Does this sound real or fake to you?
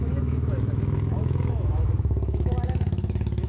fake